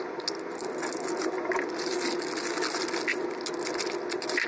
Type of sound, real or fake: real